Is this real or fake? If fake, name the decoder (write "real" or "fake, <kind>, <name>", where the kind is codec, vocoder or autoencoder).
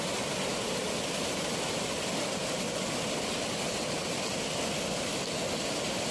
real